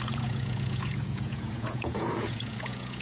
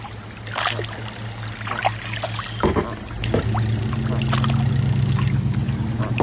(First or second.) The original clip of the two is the second